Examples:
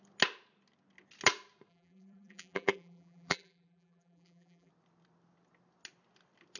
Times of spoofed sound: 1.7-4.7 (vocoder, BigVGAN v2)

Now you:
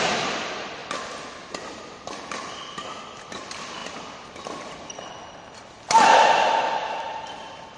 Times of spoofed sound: 0.0-0.8 (vocoder, BigVGAN v2); 1.8-3.8; 5.3-7.8